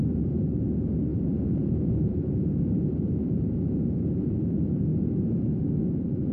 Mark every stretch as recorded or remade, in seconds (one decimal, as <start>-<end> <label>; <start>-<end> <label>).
0.0-4.9 remade; 4.9-5.8 recorded; 5.8-6.3 remade